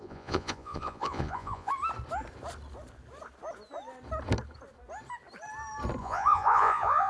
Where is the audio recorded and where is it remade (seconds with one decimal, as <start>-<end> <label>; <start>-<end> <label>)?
0.0-1.7 remade; 1.7-6.0 recorded; 6.0-7.1 remade